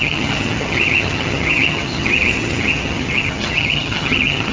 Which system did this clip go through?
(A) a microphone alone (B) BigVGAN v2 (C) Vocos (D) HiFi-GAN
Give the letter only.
D